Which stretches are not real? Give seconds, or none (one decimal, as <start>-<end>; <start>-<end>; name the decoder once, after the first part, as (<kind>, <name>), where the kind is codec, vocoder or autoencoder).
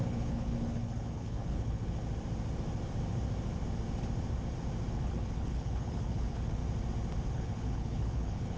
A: 0.0-2.0 (codec, HILCodec); 4.9-6.6; 7.3-8.6